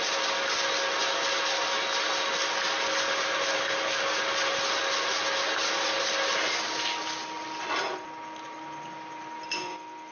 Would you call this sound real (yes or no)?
yes